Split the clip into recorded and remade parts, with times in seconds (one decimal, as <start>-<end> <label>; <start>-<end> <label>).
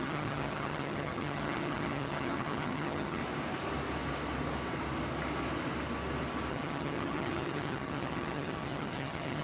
0.0-3.2 remade; 3.2-6.5 recorded; 6.5-9.4 remade